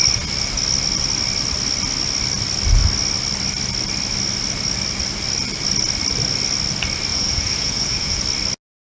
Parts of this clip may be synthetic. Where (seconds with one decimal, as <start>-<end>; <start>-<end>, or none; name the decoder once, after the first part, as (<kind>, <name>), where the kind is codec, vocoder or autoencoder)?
7.1-8.2 (vocoder, Vocos)